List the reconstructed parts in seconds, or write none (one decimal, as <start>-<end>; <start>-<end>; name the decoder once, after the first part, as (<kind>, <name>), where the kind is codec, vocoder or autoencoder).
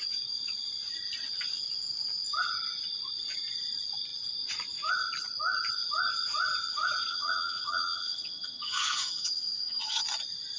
7.1-10.0 (vocoder, HiFi-GAN)